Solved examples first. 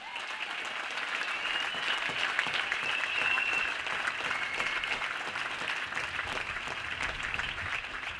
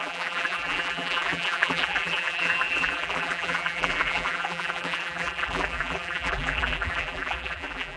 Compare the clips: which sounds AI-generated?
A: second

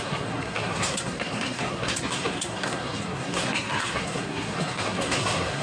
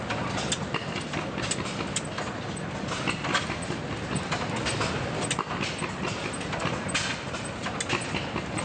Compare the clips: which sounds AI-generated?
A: first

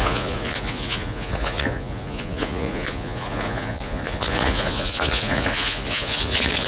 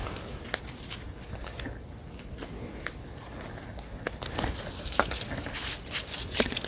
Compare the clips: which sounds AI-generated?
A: first